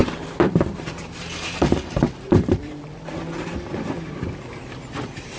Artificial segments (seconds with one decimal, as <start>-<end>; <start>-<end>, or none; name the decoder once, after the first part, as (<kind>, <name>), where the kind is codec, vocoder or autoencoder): 0.0-3.1 (vocoder, BigVGAN v2)